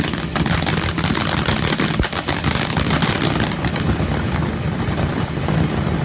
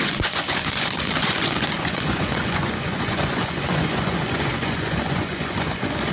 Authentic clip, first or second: first